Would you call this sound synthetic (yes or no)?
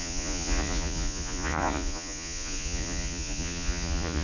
yes